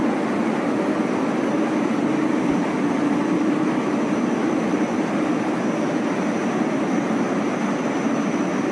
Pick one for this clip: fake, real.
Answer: real